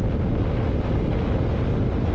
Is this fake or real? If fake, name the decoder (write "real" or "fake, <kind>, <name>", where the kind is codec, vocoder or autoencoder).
real